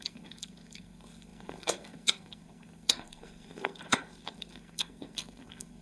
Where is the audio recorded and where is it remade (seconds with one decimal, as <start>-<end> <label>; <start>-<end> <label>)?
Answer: 0.0-5.8 remade